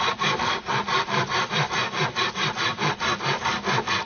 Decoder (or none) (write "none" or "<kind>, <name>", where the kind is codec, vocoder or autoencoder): vocoder, BigVGAN v2